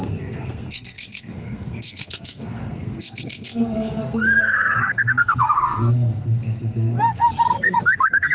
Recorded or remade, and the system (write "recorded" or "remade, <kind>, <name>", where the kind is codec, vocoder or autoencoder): remade, codec, SNAC